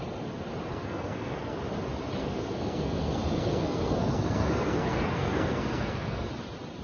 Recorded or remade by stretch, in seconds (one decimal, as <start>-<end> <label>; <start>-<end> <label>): 0.0-0.7 recorded; 0.7-1.6 remade; 1.6-2.2 recorded; 2.2-6.3 remade; 6.3-6.8 recorded